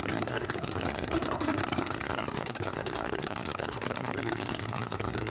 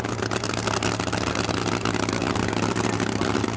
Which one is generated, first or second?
first